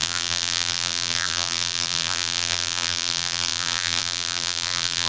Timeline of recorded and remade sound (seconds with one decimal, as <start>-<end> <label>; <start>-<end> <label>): 0.0-5.1 remade